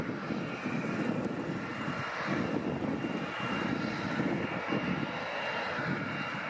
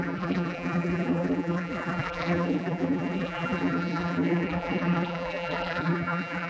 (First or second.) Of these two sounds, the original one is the first